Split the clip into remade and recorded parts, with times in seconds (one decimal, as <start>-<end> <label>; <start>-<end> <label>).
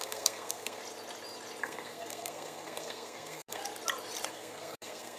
0.0-0.8 remade; 0.8-1.6 recorded; 1.6-3.6 remade; 3.6-4.3 recorded; 4.3-5.2 remade